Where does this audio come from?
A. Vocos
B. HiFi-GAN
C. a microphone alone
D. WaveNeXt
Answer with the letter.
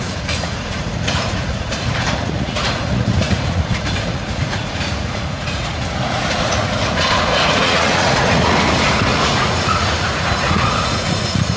A